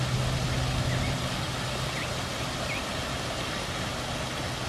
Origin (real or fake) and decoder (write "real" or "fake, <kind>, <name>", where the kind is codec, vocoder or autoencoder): real